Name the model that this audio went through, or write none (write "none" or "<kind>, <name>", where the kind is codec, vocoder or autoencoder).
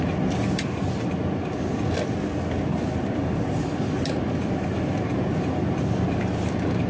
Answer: none